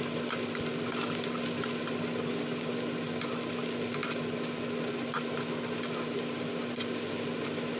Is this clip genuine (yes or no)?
yes